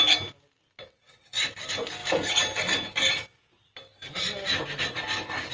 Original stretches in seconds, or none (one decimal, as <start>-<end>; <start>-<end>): 0.0-5.5